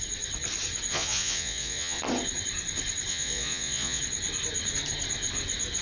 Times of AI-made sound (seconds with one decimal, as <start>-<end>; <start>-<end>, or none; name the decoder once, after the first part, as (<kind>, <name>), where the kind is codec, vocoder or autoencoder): 0.9-2.0 (vocoder, Vocos); 3.1-4.0